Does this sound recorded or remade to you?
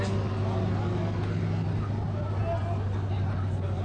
recorded